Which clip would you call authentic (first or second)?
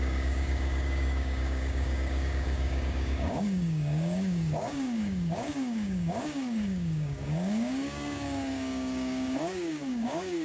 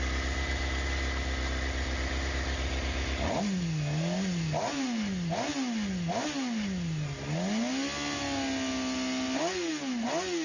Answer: second